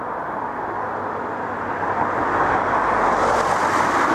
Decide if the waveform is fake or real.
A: real